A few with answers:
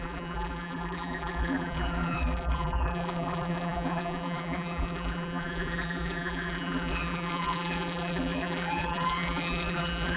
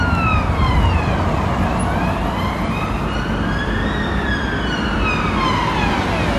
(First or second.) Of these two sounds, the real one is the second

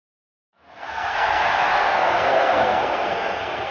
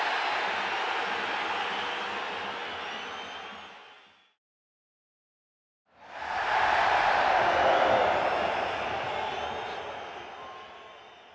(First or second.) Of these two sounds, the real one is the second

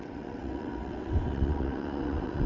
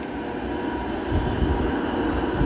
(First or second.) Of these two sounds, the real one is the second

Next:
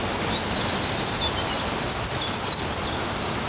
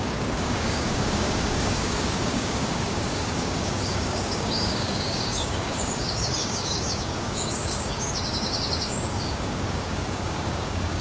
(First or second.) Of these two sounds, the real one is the first